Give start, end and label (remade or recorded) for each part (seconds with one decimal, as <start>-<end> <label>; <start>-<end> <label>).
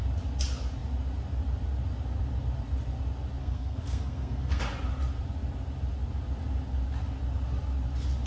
0.0-3.4 recorded; 3.4-4.6 remade; 4.6-8.3 recorded